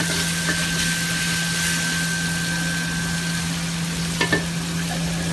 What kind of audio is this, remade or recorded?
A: recorded